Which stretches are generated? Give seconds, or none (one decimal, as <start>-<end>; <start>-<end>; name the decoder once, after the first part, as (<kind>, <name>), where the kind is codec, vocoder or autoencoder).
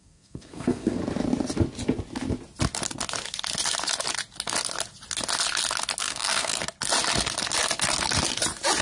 0.0-1.0 (codec, SNAC); 6.0-6.5